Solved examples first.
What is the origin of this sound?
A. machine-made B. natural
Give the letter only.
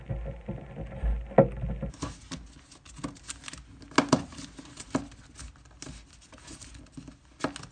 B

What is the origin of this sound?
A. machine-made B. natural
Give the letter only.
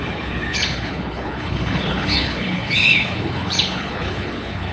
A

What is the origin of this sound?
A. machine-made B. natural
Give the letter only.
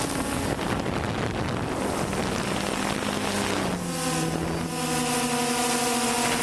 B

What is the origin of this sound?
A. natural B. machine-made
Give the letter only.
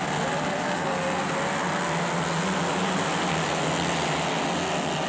A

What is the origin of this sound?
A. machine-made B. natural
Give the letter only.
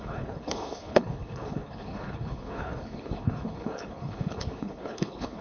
A